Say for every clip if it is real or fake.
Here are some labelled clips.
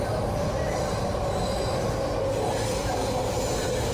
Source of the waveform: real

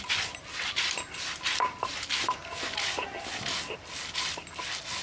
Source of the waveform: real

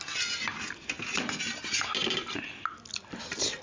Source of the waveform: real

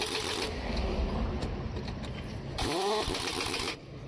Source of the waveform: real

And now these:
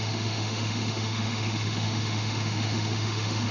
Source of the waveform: fake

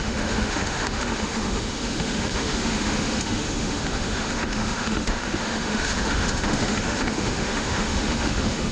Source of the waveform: fake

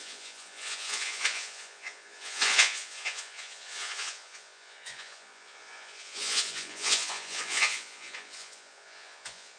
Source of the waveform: fake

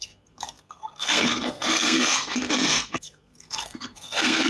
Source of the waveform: fake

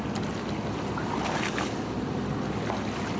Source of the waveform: real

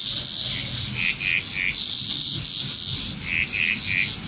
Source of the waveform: real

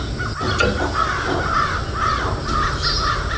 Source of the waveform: real